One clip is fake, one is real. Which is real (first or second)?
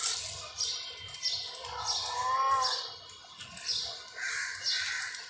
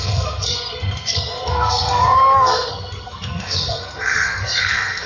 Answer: first